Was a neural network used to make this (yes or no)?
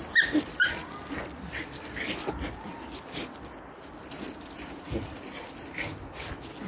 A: no